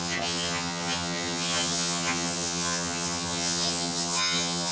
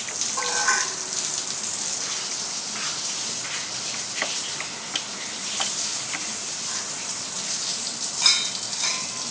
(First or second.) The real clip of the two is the second